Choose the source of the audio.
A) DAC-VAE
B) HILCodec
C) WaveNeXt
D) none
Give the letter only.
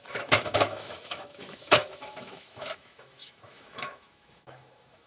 A